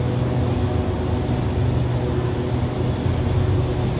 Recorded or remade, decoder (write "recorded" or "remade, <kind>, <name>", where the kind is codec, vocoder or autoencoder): recorded